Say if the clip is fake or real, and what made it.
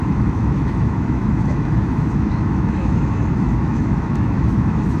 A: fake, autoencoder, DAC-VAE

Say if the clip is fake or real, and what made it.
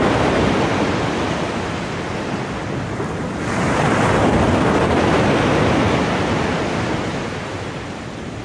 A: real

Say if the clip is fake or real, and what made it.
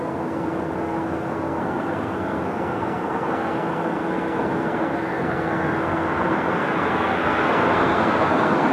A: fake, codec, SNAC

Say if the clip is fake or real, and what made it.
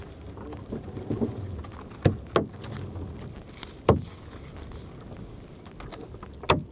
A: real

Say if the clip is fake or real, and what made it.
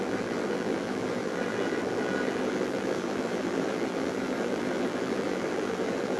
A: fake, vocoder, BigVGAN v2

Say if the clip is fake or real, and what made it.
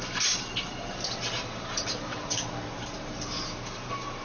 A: fake, vocoder, BigVGAN v2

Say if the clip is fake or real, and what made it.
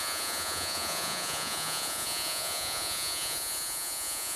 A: fake, vocoder, Vocos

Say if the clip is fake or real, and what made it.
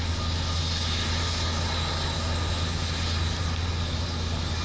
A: real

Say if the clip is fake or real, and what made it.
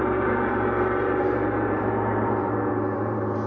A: fake, vocoder, BigVGAN v2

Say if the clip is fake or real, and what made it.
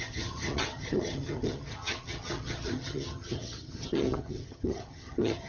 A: fake, vocoder, HiFi-GAN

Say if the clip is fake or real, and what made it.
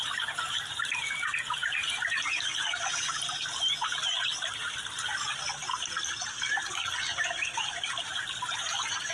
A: real